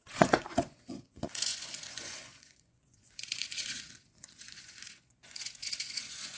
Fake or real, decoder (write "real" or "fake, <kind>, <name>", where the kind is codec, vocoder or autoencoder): fake, vocoder, Vocos